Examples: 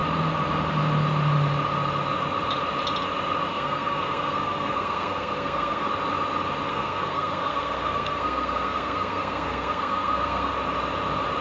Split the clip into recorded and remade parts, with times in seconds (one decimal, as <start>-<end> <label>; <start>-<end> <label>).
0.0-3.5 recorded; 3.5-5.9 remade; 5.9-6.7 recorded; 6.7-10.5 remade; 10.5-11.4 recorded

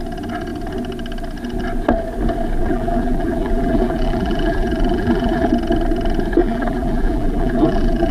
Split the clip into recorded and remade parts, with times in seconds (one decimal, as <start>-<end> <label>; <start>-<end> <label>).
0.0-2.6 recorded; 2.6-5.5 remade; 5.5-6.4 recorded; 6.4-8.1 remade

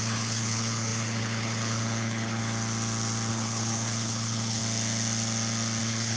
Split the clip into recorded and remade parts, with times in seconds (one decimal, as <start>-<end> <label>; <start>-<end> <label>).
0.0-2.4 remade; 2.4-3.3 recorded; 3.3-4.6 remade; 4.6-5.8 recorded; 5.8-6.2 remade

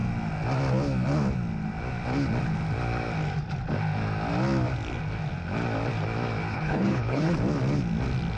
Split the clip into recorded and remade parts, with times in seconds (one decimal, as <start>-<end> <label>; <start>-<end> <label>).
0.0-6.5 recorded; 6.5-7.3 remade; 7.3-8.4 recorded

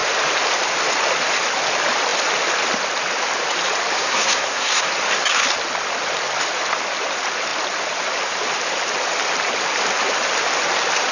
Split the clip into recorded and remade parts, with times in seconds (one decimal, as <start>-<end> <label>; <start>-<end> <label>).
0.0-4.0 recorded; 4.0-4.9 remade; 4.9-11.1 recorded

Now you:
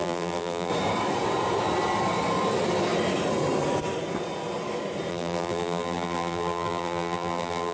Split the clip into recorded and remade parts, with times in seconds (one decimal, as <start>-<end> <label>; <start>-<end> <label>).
0.0-0.7 remade; 0.7-5.1 recorded; 5.1-7.7 remade

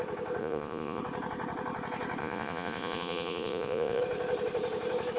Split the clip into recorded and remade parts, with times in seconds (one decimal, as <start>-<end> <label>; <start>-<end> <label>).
0.0-0.4 recorded; 0.4-1.0 remade; 1.0-2.2 recorded; 2.2-4.0 remade; 4.0-5.2 recorded